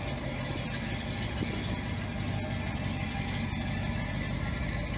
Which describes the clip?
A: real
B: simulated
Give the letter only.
A